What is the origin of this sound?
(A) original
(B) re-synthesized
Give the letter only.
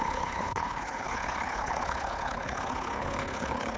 B